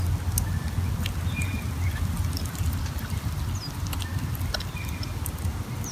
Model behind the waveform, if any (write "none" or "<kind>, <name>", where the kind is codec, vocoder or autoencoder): none